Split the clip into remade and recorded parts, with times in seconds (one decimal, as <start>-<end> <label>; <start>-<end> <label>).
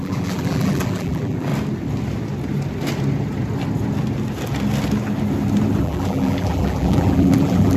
0.0-1.5 remade; 1.5-5.8 recorded; 5.8-7.8 remade